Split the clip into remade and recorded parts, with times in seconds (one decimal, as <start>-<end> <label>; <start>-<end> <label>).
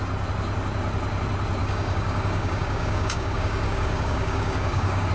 0.0-1.6 recorded; 1.6-5.1 remade